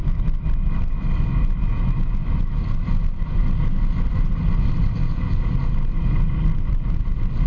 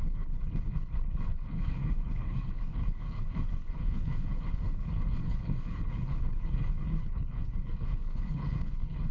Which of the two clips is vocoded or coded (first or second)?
second